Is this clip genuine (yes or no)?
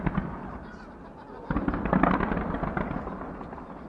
yes